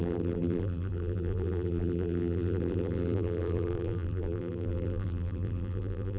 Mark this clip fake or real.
fake